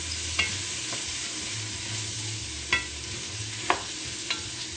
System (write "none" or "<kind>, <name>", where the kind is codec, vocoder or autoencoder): none